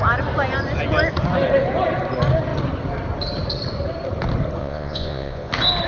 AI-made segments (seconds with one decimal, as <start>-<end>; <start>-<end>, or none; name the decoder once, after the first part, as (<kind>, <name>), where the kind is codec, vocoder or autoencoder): 4.6-5.5 (vocoder, Vocos)